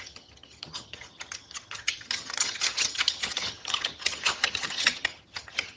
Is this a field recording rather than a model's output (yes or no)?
no